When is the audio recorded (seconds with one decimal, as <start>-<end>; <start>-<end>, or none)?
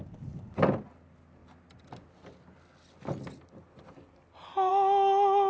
0.0-5.5